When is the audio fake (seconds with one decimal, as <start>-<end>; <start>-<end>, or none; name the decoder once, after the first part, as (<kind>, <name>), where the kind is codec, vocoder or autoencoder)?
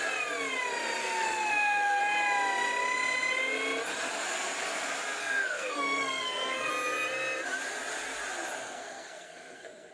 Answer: 1.0-2.0 (codec, SNAC); 5.2-6.7; 8.6-9.9